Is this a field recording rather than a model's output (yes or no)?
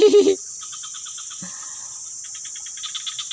yes